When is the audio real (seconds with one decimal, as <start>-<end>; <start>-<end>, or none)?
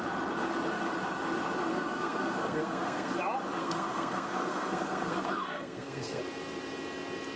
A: 0.0-1.7; 3.1-3.6; 6.2-7.4